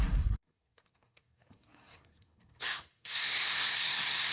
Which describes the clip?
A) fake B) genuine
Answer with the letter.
A